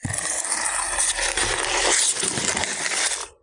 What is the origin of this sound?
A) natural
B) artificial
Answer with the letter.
A